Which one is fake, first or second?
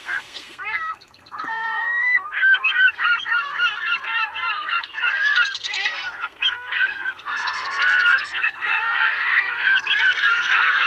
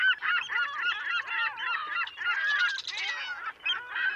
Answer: first